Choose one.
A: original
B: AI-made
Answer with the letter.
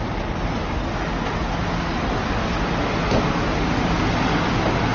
A